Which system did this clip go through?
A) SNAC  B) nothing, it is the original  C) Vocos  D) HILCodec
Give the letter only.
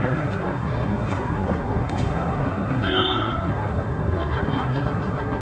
A